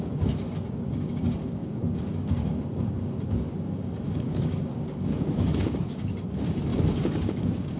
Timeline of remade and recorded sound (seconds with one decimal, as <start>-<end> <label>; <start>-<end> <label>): 0.0-6.7 remade; 6.7-7.2 recorded; 7.2-7.8 remade